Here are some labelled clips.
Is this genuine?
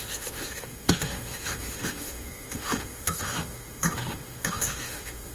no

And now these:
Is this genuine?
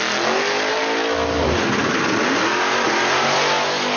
yes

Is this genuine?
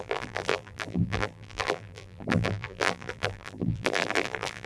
no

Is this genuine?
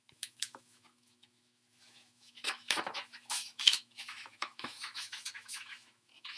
no